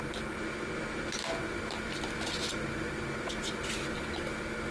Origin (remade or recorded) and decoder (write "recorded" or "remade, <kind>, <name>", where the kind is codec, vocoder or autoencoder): recorded